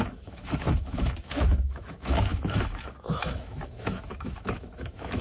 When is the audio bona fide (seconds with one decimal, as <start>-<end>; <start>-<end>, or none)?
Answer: none